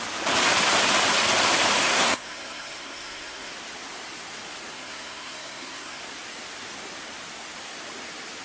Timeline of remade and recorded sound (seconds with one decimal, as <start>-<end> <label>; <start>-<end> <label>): 0.0-1.8 recorded; 1.8-3.5 remade; 3.5-4.7 recorded; 4.7-6.0 remade; 6.0-8.4 recorded